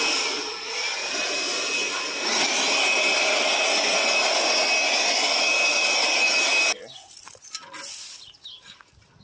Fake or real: real